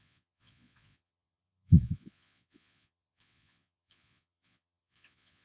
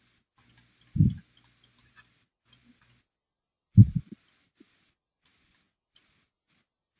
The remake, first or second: first